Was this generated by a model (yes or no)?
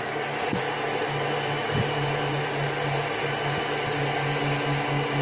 no